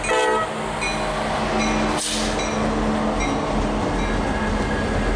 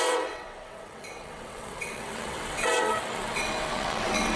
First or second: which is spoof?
second